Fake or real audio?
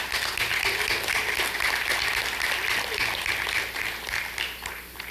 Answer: real